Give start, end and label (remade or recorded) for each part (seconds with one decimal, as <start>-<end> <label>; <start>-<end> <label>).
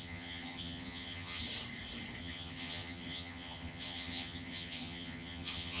0.0-1.4 remade; 1.4-2.2 recorded; 2.2-5.8 remade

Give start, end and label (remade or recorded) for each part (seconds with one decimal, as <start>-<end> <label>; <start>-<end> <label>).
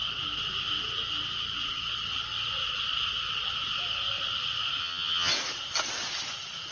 0.0-4.8 recorded; 4.8-5.3 remade; 5.3-6.7 recorded